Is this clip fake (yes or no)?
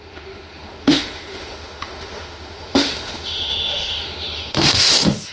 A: yes